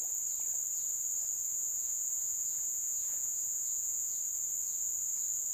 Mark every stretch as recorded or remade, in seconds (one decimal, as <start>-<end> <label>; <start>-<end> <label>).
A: 0.0-1.5 recorded; 1.5-4.2 remade; 4.2-5.5 recorded